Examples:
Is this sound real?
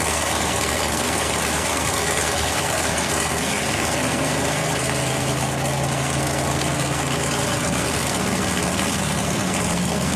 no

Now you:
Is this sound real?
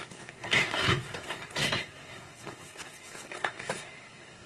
no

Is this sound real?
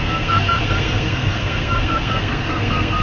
no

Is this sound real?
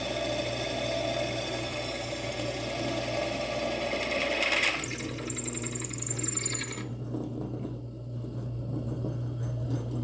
yes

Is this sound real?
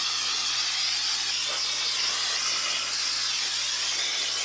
yes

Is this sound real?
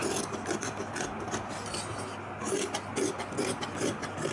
yes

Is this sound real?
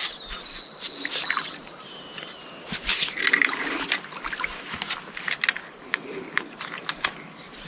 yes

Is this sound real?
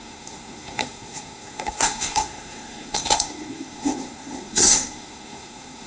no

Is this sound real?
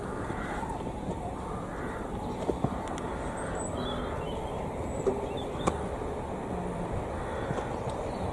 yes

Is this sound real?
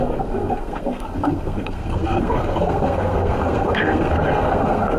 no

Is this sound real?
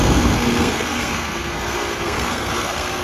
no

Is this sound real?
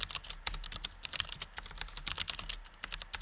yes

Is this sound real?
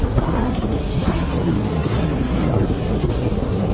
no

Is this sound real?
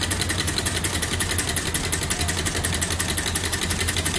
yes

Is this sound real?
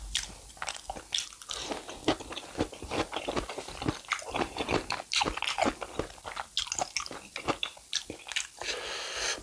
yes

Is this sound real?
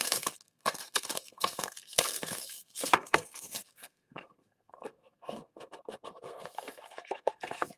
no